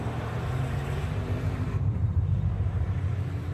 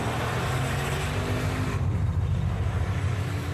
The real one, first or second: second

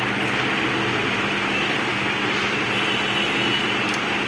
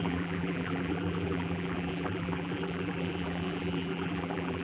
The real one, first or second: first